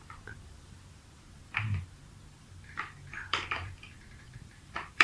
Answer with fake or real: fake